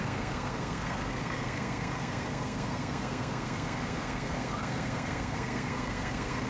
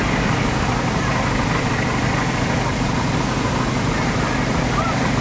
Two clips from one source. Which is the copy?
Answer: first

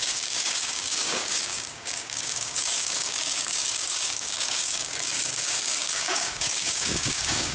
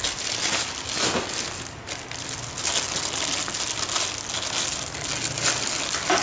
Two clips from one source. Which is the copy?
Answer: first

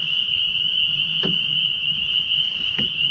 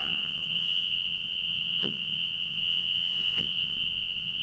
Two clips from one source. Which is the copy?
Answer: second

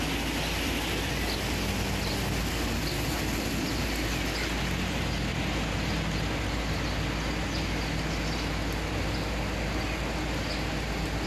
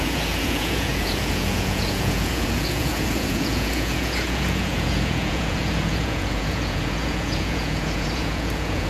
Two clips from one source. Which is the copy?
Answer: second